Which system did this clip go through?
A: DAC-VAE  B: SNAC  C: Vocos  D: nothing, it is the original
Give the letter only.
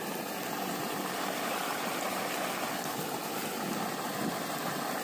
D